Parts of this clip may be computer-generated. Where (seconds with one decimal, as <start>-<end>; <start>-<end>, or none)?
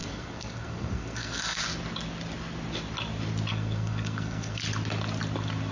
0.0-1.6; 3.5-4.6